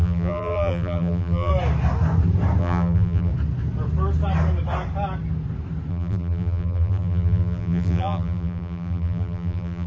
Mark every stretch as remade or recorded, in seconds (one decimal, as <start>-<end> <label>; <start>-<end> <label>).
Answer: 0.0-1.5 remade; 1.5-2.6 recorded; 2.6-3.3 remade; 3.3-5.9 recorded; 5.9-9.9 remade